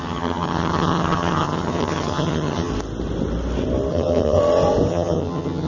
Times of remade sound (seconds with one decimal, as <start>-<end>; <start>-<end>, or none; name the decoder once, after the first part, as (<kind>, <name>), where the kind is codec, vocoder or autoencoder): 0.0-2.7 (vocoder, HiFi-GAN); 3.9-4.4; 4.9-5.7